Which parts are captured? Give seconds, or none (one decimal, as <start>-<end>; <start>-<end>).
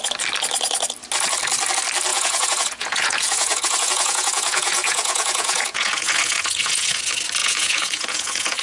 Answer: 0.0-2.1; 7.0-7.4